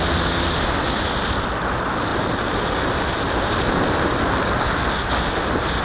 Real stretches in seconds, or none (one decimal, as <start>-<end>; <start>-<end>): 0.0-5.8